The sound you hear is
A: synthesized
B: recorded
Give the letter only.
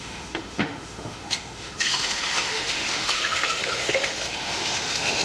A